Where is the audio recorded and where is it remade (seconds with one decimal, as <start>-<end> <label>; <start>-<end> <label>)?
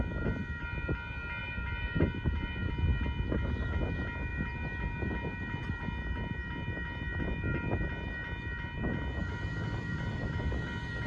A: 0.0-1.4 recorded; 1.4-2.7 remade; 2.7-9.2 recorded; 9.2-10.5 remade; 10.5-11.1 recorded